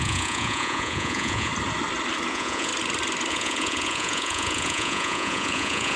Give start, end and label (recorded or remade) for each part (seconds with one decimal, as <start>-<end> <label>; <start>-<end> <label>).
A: 0.0-1.5 remade; 1.5-2.3 recorded; 2.3-2.7 remade; 2.7-3.3 recorded; 3.3-6.0 remade